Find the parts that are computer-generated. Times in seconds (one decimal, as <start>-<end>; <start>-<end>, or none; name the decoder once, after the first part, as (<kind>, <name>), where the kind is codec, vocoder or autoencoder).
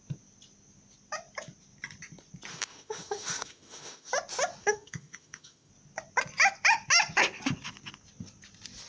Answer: 2.5-4.1 (autoencoder, DAC-VAE); 4.6-5.7